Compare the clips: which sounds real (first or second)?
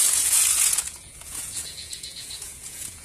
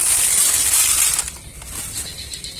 second